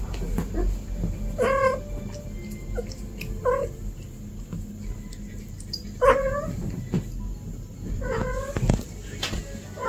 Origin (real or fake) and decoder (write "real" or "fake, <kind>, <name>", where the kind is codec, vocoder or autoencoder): real